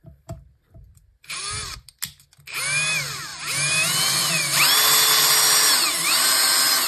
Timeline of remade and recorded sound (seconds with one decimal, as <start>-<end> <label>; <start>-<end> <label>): 0.0-1.4 remade; 1.4-6.9 recorded